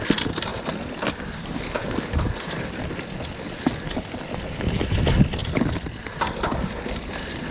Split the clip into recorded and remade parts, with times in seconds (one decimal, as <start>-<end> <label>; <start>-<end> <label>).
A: 0.0-0.5 recorded; 0.5-2.6 remade; 2.6-5.4 recorded; 5.4-6.0 remade; 6.0-7.5 recorded